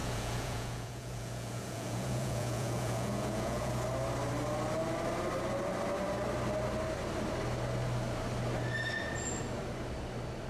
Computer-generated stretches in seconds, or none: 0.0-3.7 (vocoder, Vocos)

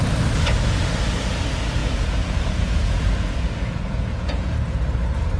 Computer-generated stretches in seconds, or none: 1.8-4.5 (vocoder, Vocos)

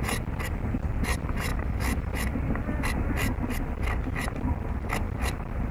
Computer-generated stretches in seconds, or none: none

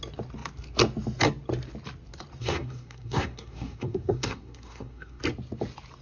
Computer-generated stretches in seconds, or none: 2.4-5.2 (codec, SNAC)

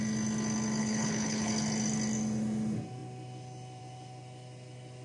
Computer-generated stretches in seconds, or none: 0.8-1.5 (codec, HILCodec)

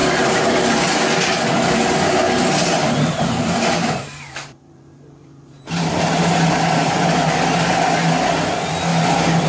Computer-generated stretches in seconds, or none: 0.0-0.6 (vocoder, BigVGAN v2); 2.8-7.0